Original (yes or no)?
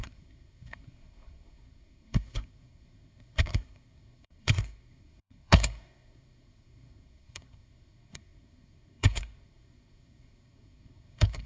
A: no